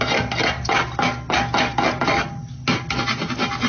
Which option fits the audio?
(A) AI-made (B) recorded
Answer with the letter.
B